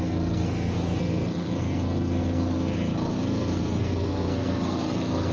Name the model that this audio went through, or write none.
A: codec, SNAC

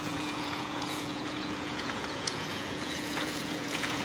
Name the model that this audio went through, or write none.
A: vocoder, Vocos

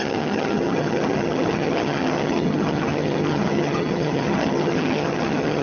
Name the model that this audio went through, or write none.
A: vocoder, HiFi-GAN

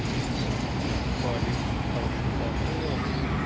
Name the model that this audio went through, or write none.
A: none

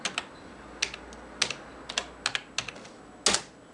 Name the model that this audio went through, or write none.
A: none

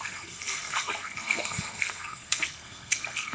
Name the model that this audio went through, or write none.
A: codec, SNAC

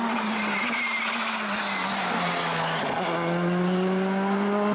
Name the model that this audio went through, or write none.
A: none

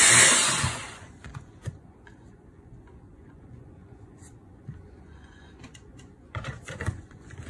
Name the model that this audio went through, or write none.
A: vocoder, Vocos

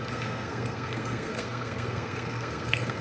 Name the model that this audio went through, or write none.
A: codec, SNAC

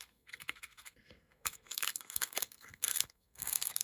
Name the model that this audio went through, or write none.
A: codec, SNAC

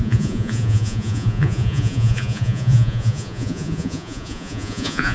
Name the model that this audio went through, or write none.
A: vocoder, Vocos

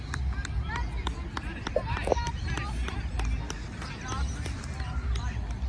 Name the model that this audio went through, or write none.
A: none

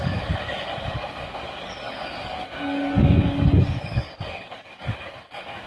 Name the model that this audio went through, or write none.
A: codec, DAC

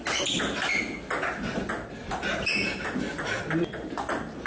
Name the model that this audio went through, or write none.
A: none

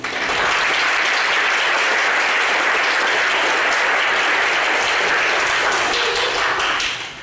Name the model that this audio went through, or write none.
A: none